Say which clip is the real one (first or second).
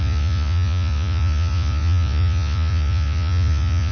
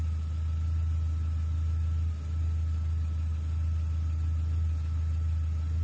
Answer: second